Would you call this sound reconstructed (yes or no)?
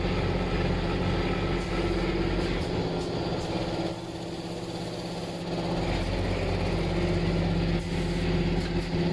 no